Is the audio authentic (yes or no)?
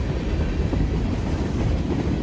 yes